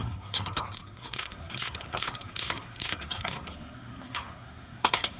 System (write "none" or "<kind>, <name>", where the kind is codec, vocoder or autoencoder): codec, SNAC